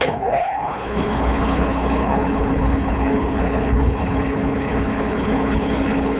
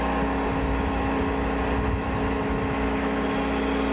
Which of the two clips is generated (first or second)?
first